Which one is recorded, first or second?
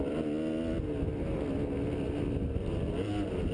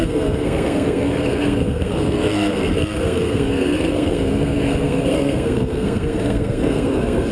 first